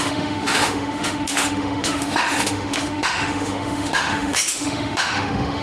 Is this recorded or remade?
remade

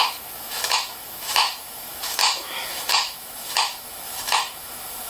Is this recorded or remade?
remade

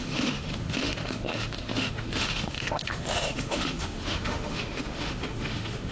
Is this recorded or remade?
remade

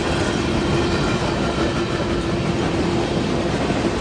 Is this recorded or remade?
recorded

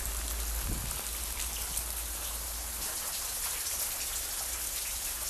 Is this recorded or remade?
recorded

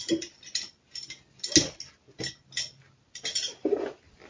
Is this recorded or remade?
recorded